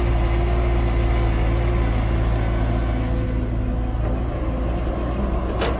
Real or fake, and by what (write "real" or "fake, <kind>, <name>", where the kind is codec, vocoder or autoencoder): real